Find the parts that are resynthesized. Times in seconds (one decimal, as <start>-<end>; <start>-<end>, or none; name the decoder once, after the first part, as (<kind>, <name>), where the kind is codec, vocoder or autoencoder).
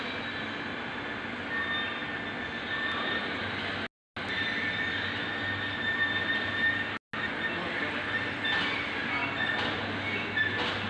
none